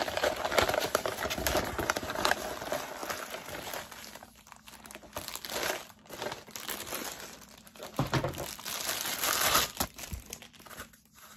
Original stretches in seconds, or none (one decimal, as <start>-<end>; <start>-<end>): 0.0-11.4

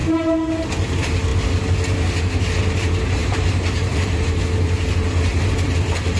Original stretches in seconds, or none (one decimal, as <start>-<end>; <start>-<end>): 0.0-3.2; 4.4-6.2

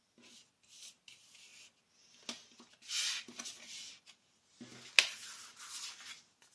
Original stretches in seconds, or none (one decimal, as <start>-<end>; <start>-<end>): 0.0-6.5

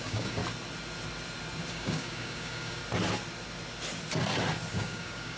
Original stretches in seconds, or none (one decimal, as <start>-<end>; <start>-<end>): 0.4-1.7; 2.8-4.7

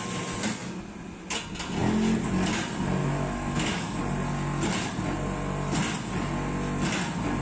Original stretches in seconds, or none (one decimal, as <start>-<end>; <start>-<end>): 0.0-3.0; 4.0-7.4

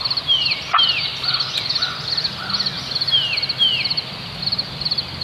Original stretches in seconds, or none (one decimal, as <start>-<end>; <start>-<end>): 0.0-5.2